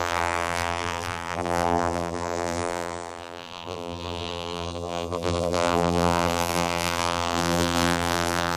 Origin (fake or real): fake